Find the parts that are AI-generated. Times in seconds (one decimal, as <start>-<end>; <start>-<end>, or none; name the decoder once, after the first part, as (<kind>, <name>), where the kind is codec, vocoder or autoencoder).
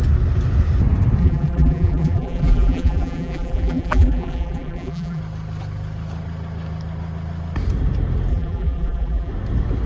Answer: 1.2-5.2 (vocoder, BigVGAN v2); 8.3-9.3